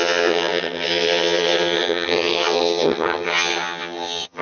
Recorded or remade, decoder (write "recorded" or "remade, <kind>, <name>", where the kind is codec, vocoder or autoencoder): remade, vocoder, HiFi-GAN